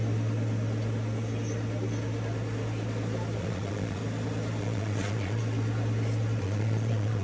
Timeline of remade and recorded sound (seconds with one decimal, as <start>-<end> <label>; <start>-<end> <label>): 0.0-3.4 recorded; 3.4-4.0 remade; 4.0-4.6 recorded; 4.6-5.4 remade; 5.4-6.4 recorded; 6.4-7.2 remade